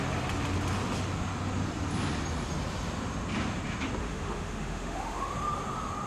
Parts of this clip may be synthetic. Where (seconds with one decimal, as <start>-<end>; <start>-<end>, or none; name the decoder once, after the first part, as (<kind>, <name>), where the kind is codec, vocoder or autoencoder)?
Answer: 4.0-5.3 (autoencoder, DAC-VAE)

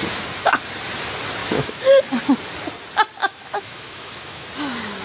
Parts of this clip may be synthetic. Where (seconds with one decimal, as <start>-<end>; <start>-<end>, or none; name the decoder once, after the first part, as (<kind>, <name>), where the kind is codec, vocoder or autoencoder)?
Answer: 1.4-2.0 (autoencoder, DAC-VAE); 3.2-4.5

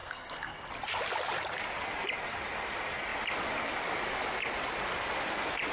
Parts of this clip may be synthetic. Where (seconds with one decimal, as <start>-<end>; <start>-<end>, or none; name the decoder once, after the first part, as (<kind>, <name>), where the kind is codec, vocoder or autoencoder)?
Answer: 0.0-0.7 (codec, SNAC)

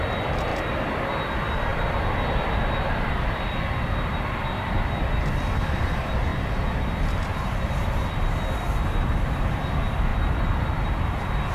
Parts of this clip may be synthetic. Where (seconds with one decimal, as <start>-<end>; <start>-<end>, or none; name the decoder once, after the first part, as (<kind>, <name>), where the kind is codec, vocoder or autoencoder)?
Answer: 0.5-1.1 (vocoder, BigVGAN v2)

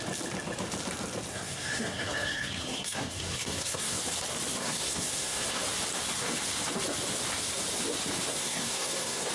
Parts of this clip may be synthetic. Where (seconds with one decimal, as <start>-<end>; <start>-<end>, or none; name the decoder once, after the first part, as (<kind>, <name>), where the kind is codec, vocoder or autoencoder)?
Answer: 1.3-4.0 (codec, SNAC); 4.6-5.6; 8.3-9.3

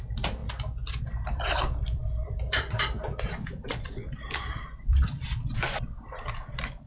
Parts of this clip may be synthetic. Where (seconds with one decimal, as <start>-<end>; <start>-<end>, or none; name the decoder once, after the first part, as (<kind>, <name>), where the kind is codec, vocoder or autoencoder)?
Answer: 0.0-0.4 (vocoder, BigVGAN v2); 1.0-6.9

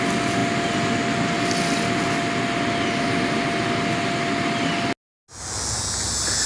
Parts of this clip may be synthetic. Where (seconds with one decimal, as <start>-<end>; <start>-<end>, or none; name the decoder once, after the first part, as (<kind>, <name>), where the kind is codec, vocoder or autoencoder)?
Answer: none